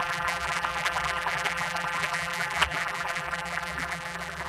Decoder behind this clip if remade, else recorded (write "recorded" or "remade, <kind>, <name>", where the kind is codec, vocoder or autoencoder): remade, vocoder, BigVGAN v2